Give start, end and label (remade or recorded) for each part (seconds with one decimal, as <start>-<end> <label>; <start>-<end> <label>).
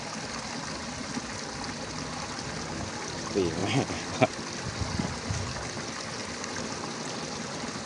0.0-7.8 recorded